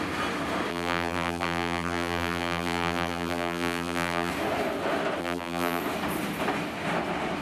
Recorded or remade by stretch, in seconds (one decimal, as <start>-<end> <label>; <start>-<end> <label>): 0.0-0.7 recorded; 0.7-4.3 remade; 4.3-5.2 recorded; 5.2-5.8 remade; 5.8-7.4 recorded